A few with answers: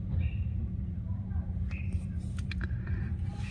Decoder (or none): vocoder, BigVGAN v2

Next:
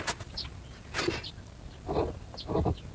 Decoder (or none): none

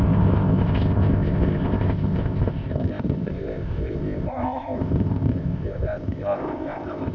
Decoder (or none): codec, ZipCodec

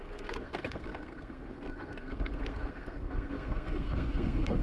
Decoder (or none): codec, SNAC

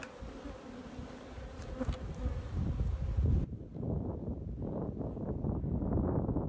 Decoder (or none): none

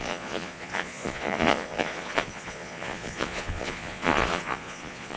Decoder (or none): vocoder, Vocos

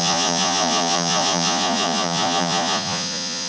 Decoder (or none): vocoder, Vocos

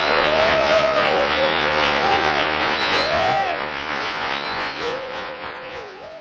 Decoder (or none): vocoder, Vocos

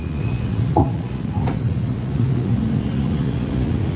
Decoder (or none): vocoder, Vocos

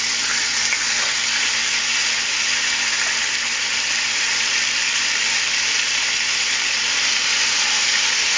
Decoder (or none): none